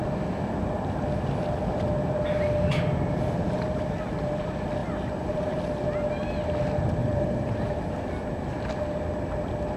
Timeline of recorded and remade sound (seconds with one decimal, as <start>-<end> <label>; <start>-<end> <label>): 0.0-4.8 recorded; 4.8-5.6 remade; 5.6-7.0 recorded; 7.0-7.8 remade; 7.8-9.8 recorded